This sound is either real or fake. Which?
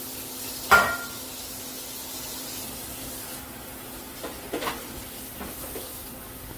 real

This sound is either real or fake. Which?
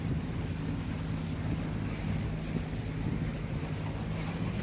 real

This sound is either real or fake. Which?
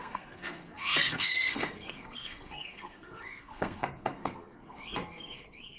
fake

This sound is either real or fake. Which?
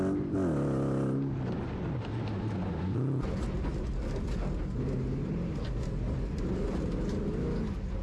real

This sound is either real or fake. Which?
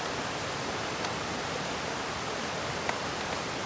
real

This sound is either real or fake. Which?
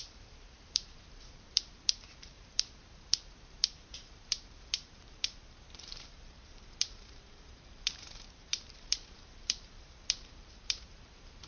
fake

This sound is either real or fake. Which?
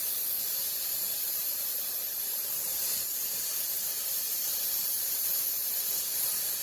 real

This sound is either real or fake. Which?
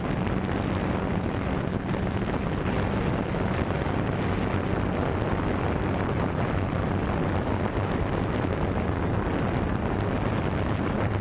real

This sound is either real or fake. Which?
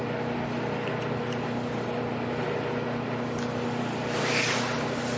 real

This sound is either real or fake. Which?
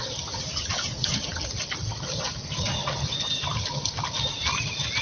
real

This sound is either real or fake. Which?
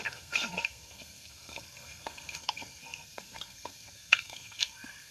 fake